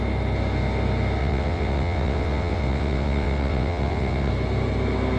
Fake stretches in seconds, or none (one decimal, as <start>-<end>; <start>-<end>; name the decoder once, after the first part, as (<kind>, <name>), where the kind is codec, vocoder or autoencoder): 1.2-4.3 (vocoder, WaveNeXt)